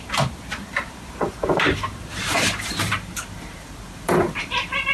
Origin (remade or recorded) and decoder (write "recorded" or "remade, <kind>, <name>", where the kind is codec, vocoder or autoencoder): remade, vocoder, BigVGAN v2